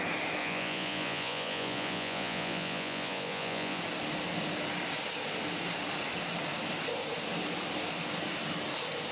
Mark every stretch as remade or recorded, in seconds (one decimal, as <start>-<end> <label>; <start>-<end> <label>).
0.0-0.4 recorded; 0.4-3.8 remade; 3.8-9.1 recorded